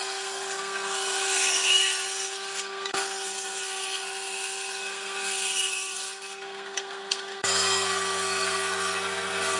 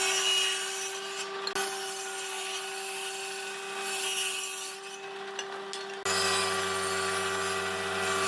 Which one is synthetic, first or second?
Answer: first